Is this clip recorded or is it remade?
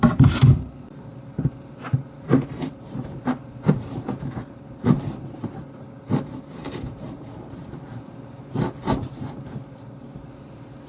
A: remade